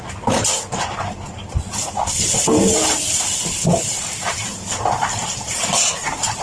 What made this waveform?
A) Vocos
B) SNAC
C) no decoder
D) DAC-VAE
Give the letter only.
C